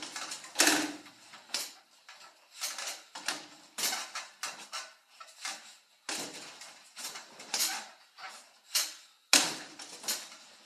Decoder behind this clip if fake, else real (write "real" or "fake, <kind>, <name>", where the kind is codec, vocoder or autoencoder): real